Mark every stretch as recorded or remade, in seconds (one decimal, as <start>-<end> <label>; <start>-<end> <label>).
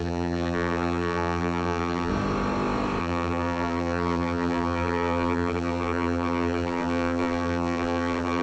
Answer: 0.0-2.1 remade; 2.1-3.0 recorded; 3.0-8.4 remade